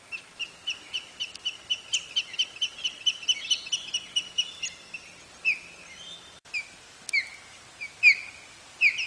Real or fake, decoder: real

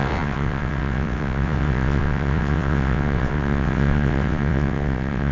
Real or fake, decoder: fake, vocoder, WaveNeXt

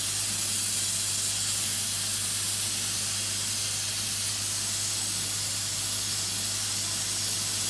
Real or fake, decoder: real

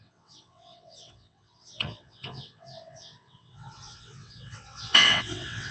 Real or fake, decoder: fake, vocoder, WaveNeXt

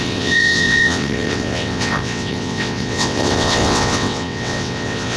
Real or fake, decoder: fake, vocoder, WaveNeXt